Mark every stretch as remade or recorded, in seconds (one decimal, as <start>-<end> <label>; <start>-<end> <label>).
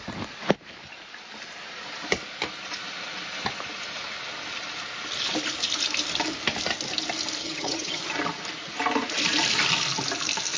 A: 0.0-7.4 recorded; 7.4-8.0 remade; 8.0-10.6 recorded